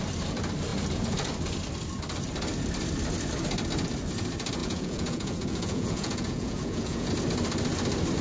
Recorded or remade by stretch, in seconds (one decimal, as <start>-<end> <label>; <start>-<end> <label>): 0.0-4.6 recorded; 4.6-7.1 remade; 7.1-8.2 recorded